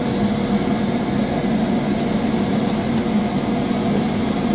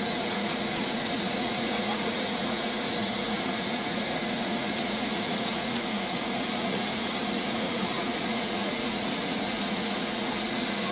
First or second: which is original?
first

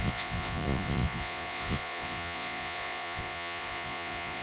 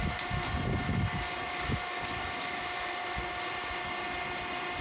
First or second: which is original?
second